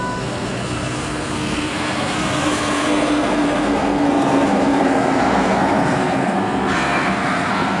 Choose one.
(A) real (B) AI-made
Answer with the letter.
B